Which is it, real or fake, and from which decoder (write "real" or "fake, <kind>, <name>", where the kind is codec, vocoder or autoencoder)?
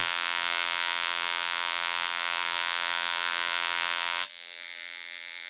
fake, vocoder, BigVGAN v2